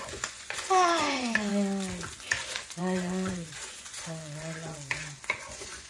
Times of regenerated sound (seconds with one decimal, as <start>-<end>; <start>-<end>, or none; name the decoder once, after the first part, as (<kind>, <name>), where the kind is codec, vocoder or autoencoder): 0.0-1.5 (vocoder, Vocos); 2.1-5.9